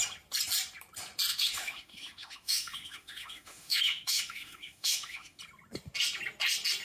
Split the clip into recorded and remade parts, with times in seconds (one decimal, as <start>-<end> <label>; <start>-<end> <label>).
0.0-1.3 recorded; 1.3-5.4 remade; 5.4-6.8 recorded